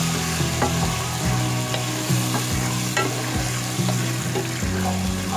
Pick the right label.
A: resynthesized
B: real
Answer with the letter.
B